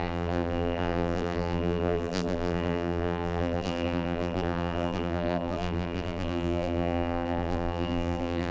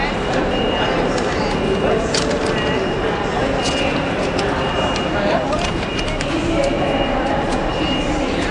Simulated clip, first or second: first